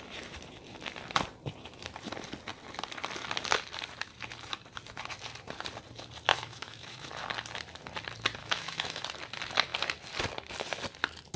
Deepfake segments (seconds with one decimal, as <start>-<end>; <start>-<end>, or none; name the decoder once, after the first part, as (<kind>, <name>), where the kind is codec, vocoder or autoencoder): 6.3-7.1 (autoencoder, DAC-VAE); 8.4-9.0